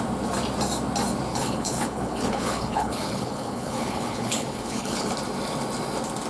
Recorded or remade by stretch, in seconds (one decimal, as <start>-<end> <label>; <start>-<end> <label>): 0.0-1.3 recorded; 1.3-5.1 remade; 5.1-6.3 recorded